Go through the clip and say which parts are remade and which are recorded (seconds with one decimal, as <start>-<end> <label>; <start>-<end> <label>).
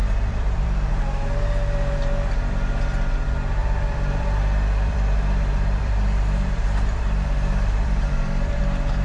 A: 0.0-0.9 remade; 0.9-3.6 recorded; 3.6-8.6 remade; 8.6-9.0 recorded